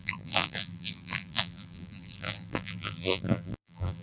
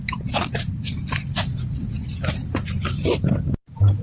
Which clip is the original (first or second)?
second